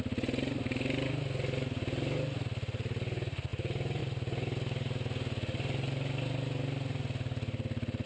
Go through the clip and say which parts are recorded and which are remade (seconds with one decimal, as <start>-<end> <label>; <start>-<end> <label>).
0.0-8.1 recorded